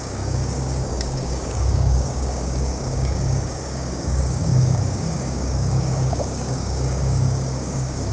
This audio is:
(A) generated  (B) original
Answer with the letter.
A